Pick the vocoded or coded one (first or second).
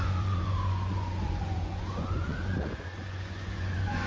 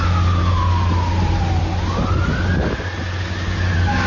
first